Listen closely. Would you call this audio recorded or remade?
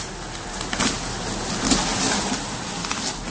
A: recorded